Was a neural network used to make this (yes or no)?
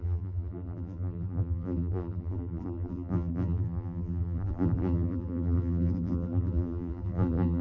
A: yes